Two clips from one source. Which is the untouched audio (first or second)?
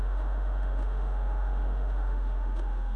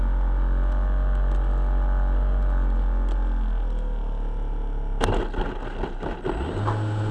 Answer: second